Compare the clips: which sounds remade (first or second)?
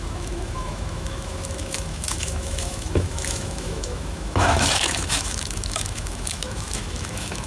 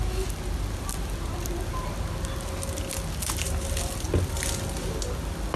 first